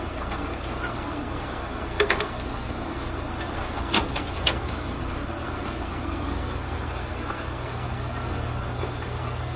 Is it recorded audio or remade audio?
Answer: remade